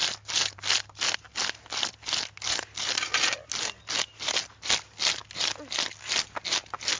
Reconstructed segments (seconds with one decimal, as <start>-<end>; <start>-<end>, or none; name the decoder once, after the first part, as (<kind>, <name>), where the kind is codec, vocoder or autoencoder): none